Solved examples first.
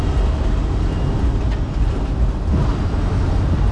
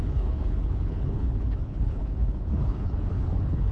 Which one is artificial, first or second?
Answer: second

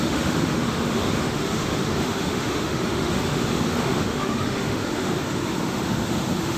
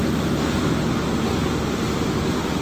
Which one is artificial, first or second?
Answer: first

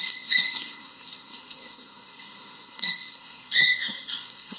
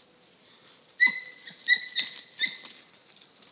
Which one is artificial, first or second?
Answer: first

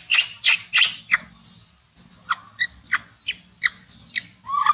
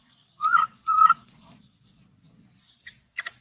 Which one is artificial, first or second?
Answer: second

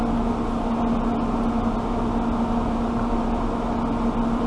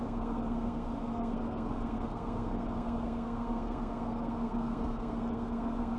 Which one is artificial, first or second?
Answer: second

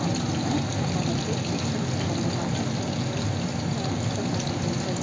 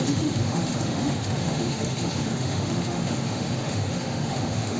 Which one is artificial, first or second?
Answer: second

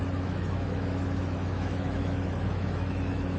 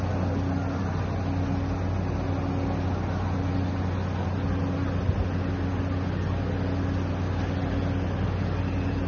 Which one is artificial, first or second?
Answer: first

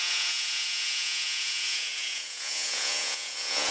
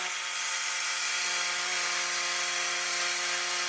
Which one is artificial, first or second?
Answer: first